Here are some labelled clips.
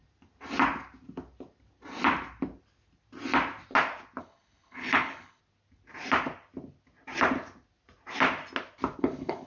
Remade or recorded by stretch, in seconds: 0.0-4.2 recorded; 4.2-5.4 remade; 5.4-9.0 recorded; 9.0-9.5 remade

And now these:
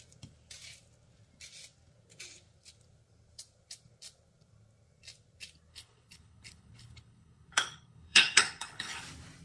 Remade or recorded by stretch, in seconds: 0.0-5.7 recorded; 5.7-9.0 remade; 9.0-9.4 recorded

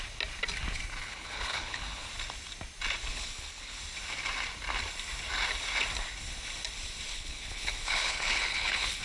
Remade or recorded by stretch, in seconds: 0.0-1.0 recorded; 1.0-2.1 remade; 2.1-3.1 recorded; 3.1-3.8 remade; 3.8-7.1 recorded; 7.1-9.0 remade